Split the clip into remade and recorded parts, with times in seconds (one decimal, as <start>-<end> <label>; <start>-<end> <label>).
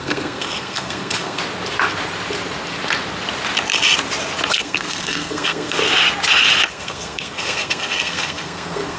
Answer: 0.0-1.4 remade; 1.4-4.5 recorded; 4.5-5.8 remade; 5.8-6.7 recorded; 6.7-9.0 remade